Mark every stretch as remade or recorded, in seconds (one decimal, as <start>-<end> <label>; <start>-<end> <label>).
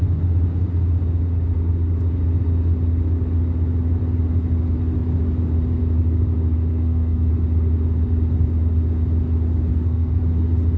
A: 0.0-6.7 recorded; 6.7-7.3 remade; 7.3-9.7 recorded; 9.7-10.2 remade; 10.2-10.8 recorded